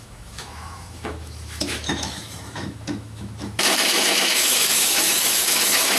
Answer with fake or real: fake